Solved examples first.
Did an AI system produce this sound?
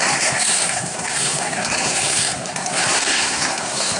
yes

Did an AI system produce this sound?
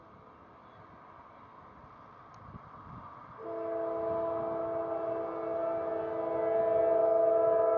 no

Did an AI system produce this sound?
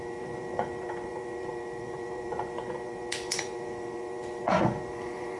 yes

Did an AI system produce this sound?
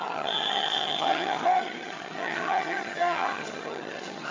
yes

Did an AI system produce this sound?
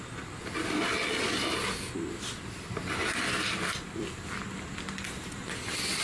no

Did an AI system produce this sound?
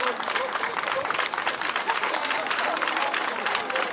yes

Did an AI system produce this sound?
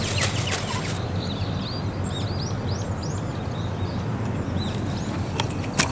no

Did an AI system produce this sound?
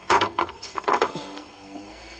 yes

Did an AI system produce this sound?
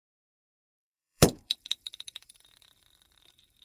yes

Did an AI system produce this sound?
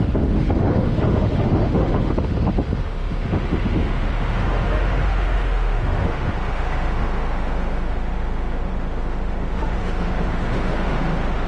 yes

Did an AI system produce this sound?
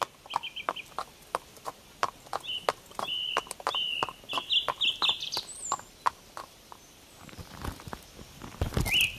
no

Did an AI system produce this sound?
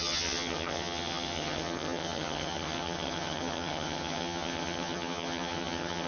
yes